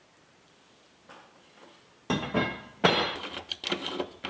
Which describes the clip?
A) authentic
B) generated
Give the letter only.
A